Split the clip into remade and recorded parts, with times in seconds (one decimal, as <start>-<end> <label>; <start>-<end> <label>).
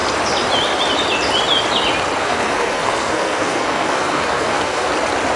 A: 0.0-2.2 recorded; 2.2-4.9 remade; 4.9-5.4 recorded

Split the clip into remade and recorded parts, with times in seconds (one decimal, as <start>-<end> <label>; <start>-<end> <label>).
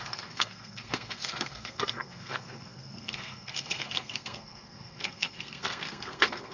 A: 0.0-6.5 remade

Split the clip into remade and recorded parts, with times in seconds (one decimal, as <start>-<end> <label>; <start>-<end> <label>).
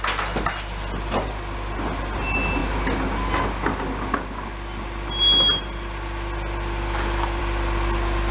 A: 0.0-8.3 recorded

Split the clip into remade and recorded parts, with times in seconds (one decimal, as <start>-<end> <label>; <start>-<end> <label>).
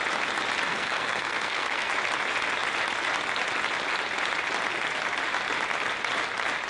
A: 0.0-0.7 recorded; 0.7-1.9 remade; 1.9-6.7 recorded